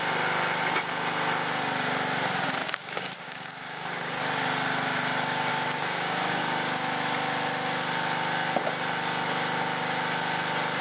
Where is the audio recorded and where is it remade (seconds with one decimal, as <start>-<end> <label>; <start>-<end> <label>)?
0.0-2.6 recorded; 2.6-4.2 remade; 4.2-5.5 recorded; 5.5-6.4 remade; 6.4-10.8 recorded